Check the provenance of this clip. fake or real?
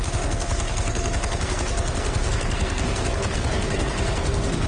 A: fake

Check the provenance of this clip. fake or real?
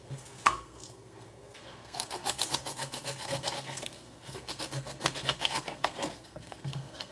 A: fake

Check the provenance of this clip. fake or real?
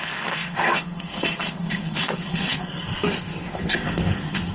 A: fake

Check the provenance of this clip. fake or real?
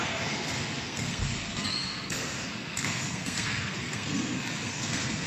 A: fake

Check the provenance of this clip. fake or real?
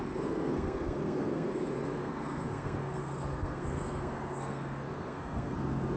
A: fake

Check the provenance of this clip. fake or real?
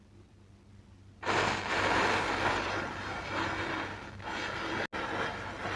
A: real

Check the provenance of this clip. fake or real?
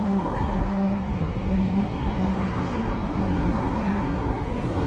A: fake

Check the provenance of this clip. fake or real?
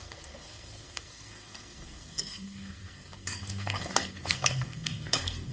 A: fake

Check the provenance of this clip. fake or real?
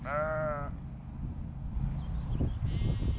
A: real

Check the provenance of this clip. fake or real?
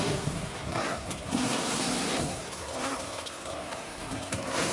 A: fake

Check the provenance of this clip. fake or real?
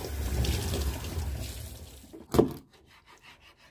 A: real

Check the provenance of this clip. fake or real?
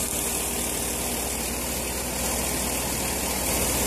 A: real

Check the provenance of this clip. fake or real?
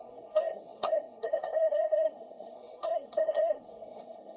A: fake